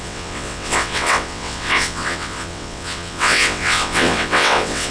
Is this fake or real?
fake